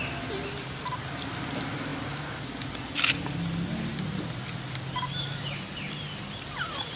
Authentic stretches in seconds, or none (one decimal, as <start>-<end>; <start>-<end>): 0.0-7.0